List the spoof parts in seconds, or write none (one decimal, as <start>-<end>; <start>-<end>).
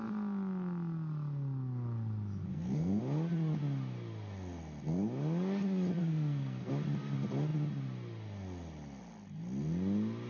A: 2.5-3.0; 6.0-6.7